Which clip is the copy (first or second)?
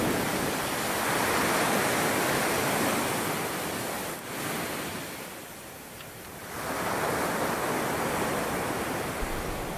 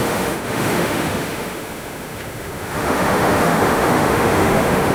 second